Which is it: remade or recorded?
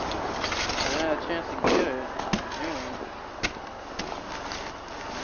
recorded